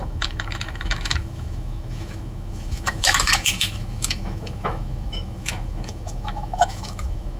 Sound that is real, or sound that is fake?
fake